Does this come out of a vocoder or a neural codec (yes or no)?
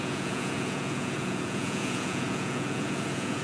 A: yes